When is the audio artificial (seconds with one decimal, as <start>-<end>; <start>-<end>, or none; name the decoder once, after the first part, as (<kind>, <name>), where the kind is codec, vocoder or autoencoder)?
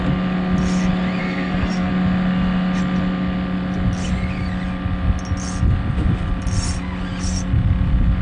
1.2-1.9 (codec, SNAC)